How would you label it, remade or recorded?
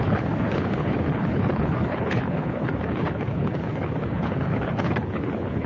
remade